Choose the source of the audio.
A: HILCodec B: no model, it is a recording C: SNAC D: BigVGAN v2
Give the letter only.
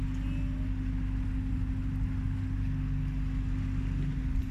B